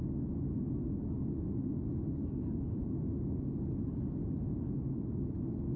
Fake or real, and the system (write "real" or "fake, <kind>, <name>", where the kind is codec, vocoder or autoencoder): real